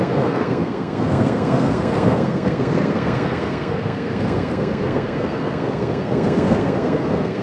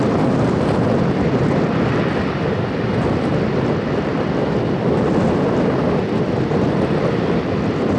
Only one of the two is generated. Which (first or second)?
first